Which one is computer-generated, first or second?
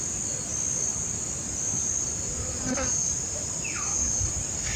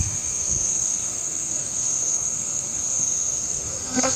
second